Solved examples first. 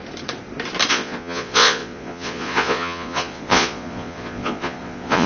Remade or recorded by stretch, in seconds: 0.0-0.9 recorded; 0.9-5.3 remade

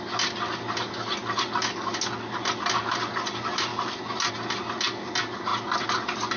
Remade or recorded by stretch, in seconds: 0.0-6.4 recorded

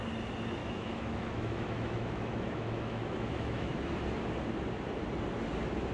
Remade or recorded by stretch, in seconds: 0.0-0.6 recorded; 0.6-3.9 remade; 3.9-5.9 recorded

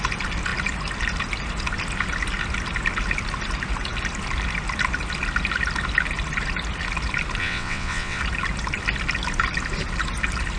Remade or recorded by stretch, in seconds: 0.0-7.4 recorded; 7.4-8.2 remade; 8.2-10.6 recorded

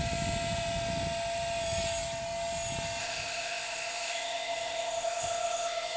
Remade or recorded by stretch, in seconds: 0.0-3.0 recorded; 3.0-6.0 remade